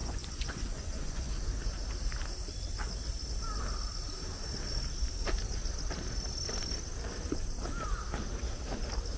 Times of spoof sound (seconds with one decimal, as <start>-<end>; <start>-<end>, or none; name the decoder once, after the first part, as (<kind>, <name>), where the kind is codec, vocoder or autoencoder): 0.0-1.3 (vocoder, Vocos)